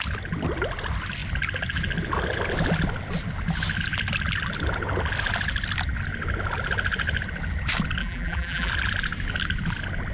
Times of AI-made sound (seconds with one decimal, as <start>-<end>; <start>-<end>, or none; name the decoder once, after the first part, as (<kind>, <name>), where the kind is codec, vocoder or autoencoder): 8.0-8.7 (vocoder, BigVGAN v2)